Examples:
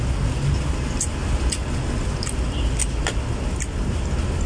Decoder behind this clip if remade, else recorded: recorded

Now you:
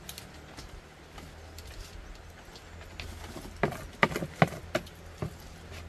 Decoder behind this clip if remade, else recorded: recorded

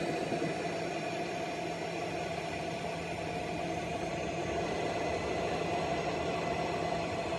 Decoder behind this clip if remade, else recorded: recorded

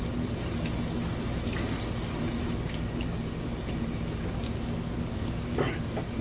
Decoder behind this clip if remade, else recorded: recorded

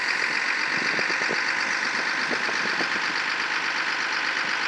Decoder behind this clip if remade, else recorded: recorded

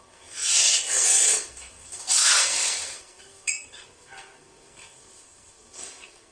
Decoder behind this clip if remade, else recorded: remade, codec, SNAC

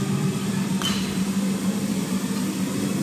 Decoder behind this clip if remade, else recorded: recorded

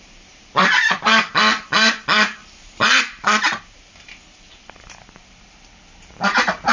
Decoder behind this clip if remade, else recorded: remade, vocoder, BigVGAN v2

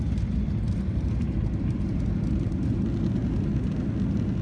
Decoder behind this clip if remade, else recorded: recorded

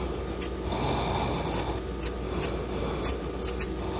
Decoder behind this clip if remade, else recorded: recorded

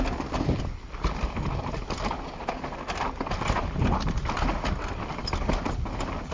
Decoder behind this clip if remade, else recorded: recorded